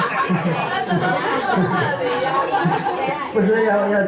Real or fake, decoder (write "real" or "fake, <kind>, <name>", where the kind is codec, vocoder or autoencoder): real